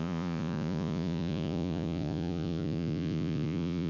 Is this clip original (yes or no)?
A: no